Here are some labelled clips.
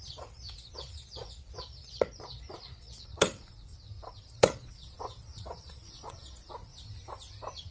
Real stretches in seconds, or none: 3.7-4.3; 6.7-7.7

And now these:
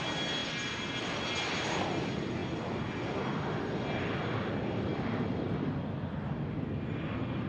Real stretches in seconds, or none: 0.0-7.5

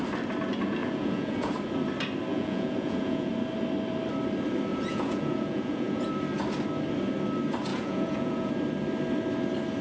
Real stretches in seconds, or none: 0.0-0.8; 1.5-2.3; 3.3-4.7; 6.1-7.7; 8.5-9.8

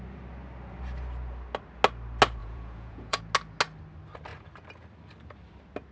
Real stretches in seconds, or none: 0.0-2.4; 3.2-5.9

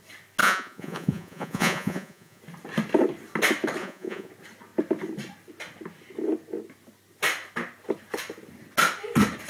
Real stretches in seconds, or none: 0.0-0.4; 2.4-3.8; 4.3-9.5

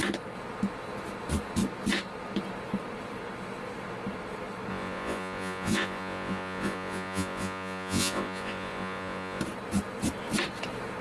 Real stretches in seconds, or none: 0.0-4.7; 9.4-11.0

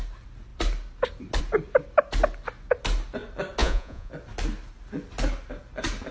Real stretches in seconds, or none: 0.0-3.6; 4.1-6.1